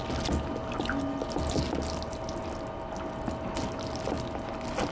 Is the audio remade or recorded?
recorded